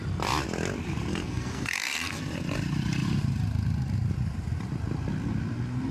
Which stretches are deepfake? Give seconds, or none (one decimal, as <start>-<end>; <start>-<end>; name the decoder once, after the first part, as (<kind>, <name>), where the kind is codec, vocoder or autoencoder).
1.1-2.2 (codec, SNAC)